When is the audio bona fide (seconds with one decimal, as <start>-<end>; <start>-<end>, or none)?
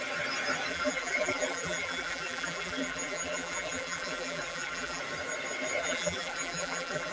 0.0-0.7; 5.0-5.8